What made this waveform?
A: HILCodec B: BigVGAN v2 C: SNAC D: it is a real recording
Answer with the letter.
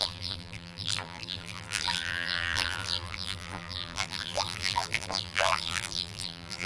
B